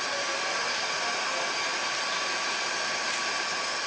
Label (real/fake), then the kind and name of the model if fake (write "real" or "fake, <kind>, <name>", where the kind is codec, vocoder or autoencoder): real